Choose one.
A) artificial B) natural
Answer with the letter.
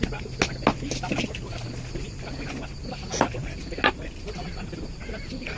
B